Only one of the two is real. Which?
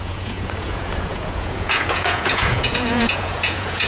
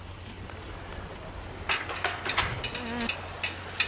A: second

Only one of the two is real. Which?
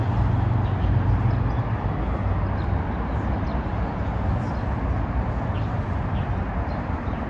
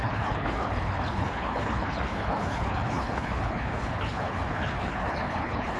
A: first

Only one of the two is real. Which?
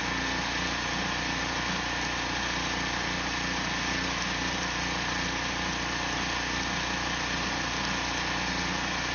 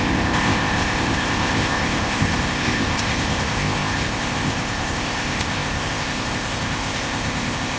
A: first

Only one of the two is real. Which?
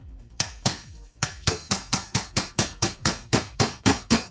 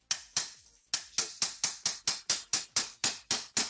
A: second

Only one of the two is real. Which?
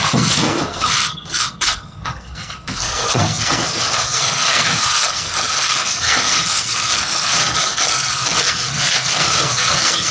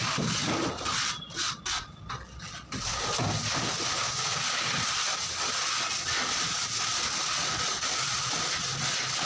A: second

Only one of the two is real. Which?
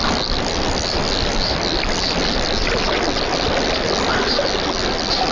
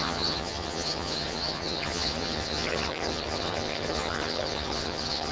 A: first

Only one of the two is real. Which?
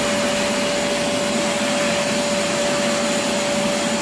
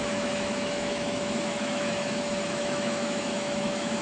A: first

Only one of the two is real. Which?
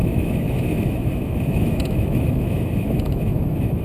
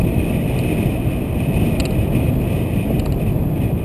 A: second